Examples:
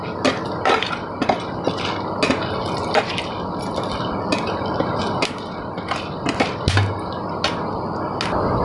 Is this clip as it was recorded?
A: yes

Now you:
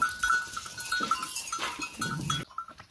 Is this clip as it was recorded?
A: yes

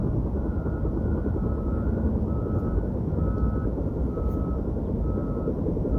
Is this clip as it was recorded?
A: yes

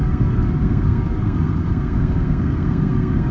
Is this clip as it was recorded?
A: no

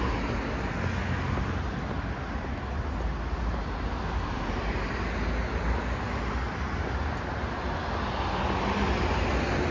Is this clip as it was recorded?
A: yes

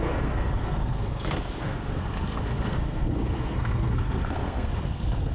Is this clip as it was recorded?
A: no